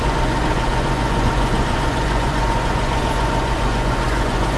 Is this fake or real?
fake